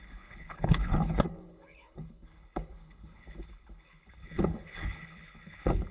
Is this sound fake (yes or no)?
yes